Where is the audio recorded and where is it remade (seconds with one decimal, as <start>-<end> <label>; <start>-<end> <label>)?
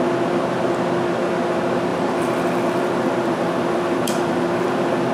0.0-1.9 recorded; 1.9-5.1 remade